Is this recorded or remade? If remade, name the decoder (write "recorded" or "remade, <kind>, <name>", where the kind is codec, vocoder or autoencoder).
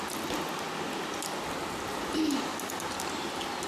recorded